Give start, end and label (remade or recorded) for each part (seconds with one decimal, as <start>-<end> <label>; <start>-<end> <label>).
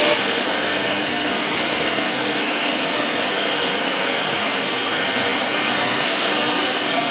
0.0-7.1 remade